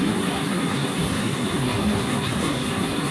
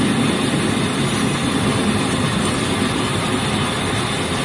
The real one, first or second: second